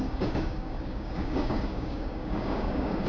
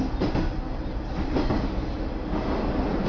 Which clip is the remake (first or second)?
first